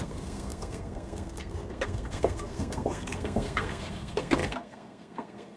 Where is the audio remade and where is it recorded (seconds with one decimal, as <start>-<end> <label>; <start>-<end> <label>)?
0.0-5.6 remade